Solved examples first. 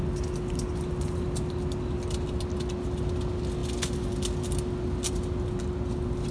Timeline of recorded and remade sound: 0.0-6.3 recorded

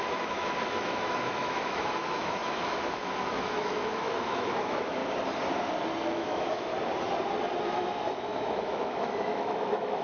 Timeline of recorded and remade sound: 0.0-5.0 remade; 5.0-6.1 recorded; 6.1-6.7 remade; 6.7-7.6 recorded; 7.6-10.0 remade

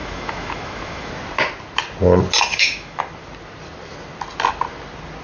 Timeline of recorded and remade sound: 0.0-1.1 remade; 1.1-2.5 recorded; 2.5-3.0 remade; 3.0-5.2 recorded

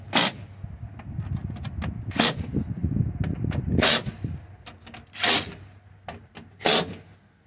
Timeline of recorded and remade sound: 0.0-7.5 recorded